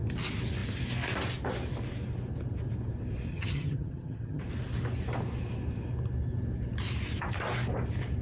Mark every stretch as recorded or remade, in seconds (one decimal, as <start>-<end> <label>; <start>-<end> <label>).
0.0-3.3 recorded; 3.3-4.4 remade; 4.4-8.2 recorded